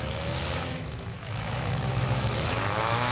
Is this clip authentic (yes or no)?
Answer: no